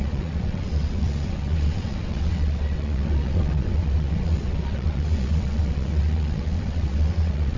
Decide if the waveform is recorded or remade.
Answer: remade